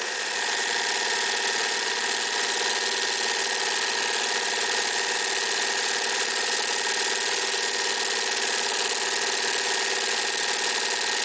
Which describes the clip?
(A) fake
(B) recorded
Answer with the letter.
B